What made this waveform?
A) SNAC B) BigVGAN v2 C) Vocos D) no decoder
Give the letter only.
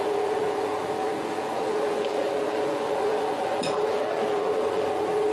C